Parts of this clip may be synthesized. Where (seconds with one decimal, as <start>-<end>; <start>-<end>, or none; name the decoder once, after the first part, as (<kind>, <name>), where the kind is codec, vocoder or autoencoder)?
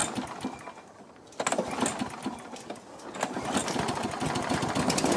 none